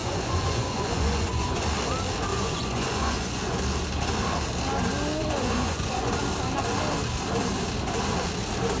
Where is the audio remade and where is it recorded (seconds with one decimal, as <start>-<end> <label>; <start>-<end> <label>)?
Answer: 0.0-1.7 remade; 1.7-2.3 recorded; 2.3-3.6 remade; 3.6-5.2 recorded; 5.2-6.1 remade; 6.1-8.8 recorded